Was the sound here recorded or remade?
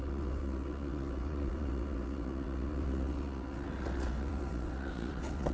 remade